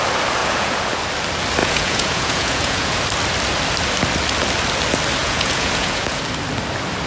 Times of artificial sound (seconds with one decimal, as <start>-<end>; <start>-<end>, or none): 0.4-0.9; 1.6-3.0; 5.2-6.2